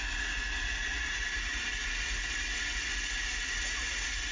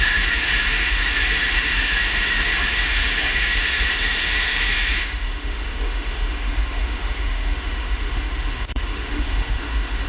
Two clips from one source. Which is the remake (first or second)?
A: second